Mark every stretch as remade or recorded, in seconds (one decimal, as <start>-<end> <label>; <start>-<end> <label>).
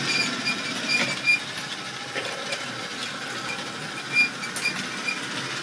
0.0-5.6 recorded